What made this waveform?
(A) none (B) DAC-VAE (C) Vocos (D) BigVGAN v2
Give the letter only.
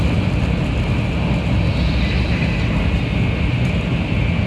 A